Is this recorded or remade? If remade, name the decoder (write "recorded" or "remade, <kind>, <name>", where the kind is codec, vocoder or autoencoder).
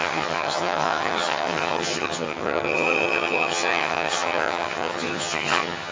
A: remade, vocoder, HiFi-GAN